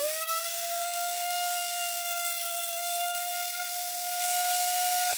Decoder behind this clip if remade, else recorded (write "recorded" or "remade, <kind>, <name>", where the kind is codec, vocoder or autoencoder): remade, codec, SNAC